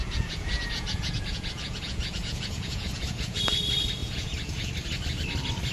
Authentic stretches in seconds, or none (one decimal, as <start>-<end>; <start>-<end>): 3.4-4.0; 4.7-5.7